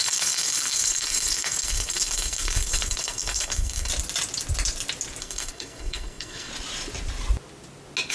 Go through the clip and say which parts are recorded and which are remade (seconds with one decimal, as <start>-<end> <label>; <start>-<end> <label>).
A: 0.0-3.9 remade; 3.9-5.2 recorded; 5.2-6.5 remade; 6.5-8.1 recorded